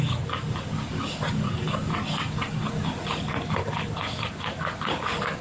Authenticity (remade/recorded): remade